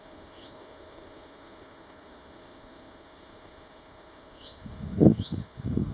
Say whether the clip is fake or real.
fake